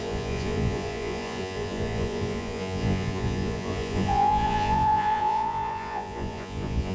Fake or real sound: fake